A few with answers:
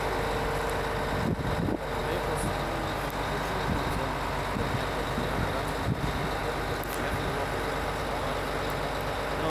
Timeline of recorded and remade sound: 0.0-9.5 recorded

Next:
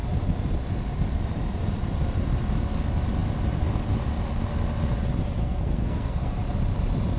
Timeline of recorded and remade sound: 0.0-5.4 recorded; 5.4-6.4 remade; 6.4-7.2 recorded

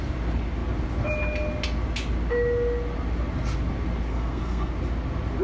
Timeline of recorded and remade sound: 0.0-4.1 recorded; 4.1-4.7 remade; 4.7-5.4 recorded

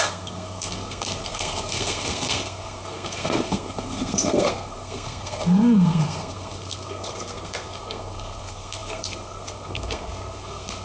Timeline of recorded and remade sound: 0.0-10.8 remade

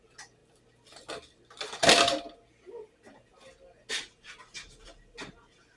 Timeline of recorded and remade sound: 0.0-5.8 recorded